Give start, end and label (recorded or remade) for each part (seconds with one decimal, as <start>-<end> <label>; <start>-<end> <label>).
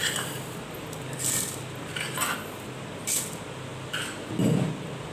0.0-5.1 recorded